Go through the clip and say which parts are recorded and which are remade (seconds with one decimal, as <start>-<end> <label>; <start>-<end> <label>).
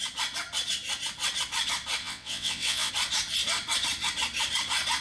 0.0-2.0 recorded; 2.0-2.9 remade; 2.9-5.0 recorded